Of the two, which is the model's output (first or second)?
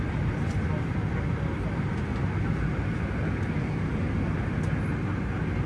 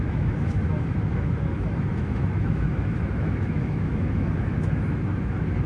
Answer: second